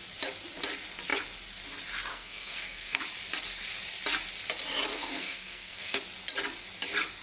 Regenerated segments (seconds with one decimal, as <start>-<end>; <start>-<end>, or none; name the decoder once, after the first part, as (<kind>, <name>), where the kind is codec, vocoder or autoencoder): 2.1-3.0 (codec, SNAC); 4.9-6.0